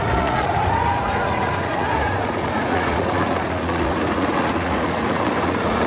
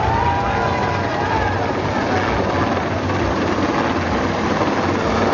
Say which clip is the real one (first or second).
second